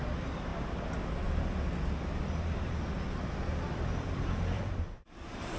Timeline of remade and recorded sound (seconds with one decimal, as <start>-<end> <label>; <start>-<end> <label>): 0.0-0.5 remade; 0.5-3.9 recorded; 3.9-5.6 remade